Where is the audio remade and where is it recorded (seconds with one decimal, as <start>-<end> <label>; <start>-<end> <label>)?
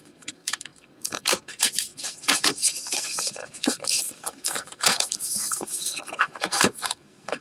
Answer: 0.0-7.4 remade